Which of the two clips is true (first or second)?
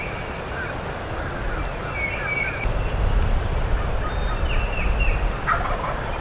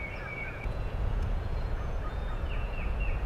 first